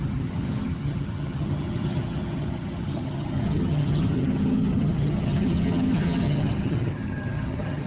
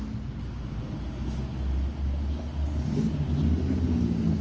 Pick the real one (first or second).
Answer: second